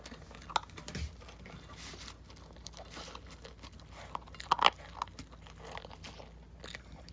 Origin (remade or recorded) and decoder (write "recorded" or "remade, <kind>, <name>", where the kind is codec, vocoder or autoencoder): recorded